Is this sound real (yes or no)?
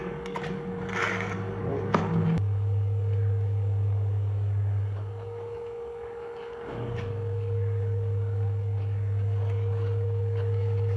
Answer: no